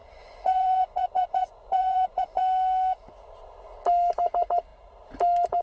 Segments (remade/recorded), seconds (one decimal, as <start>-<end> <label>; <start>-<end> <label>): 0.0-2.4 remade; 2.4-5.6 recorded